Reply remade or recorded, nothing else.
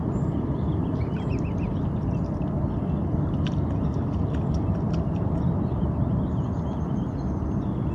recorded